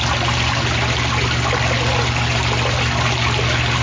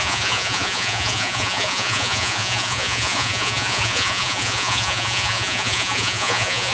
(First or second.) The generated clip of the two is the second